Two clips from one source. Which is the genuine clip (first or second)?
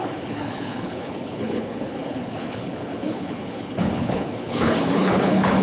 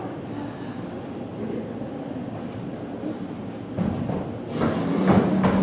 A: second